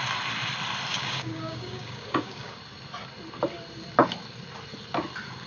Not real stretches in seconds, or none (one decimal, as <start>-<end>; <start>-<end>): 0.9-2.6